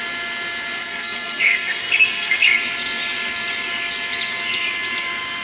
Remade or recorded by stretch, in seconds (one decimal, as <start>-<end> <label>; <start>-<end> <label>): 0.0-0.8 recorded; 0.8-2.5 remade; 2.5-5.4 recorded